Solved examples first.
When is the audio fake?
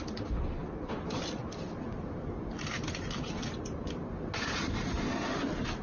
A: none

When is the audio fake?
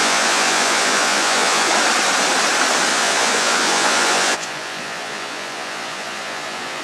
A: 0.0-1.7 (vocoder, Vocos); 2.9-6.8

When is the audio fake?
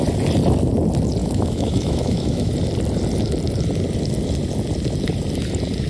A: 1.2-2.5 (autoencoder, DAC-VAE)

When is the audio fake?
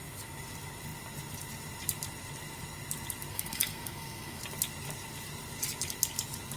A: 3.3-4.4 (codec, SNAC)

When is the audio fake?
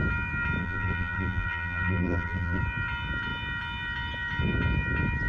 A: 0.6-2.6 (vocoder, BigVGAN v2)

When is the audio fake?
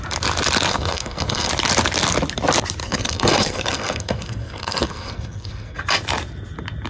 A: 0.7-1.5 (codec, SNAC); 2.8-5.8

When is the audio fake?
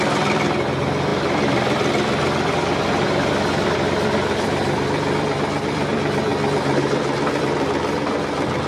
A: 0.0-6.3 (vocoder, BigVGAN v2); 7.4-8.7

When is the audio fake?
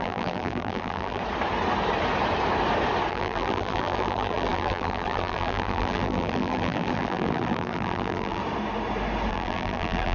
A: 0.0-1.2 (vocoder, BigVGAN v2); 3.1-8.4; 9.3-10.1